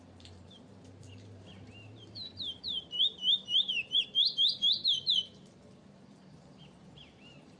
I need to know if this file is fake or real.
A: fake